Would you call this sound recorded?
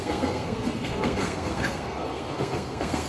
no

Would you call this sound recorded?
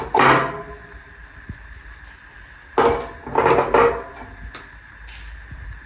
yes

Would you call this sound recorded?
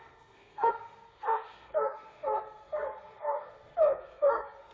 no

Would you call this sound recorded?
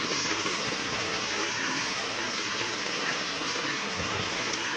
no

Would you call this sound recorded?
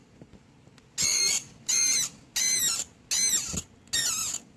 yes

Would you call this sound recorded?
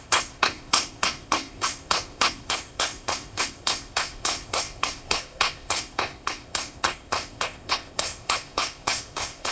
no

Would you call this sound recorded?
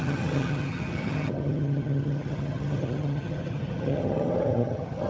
no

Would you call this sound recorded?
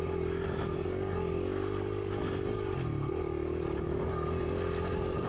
yes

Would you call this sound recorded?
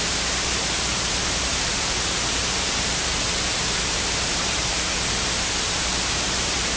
no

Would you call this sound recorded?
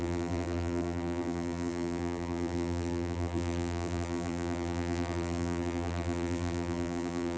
no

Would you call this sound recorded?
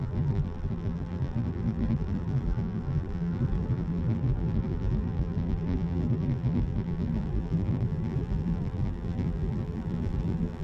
no